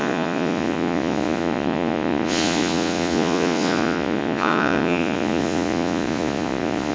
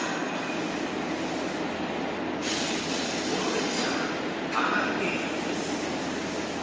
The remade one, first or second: first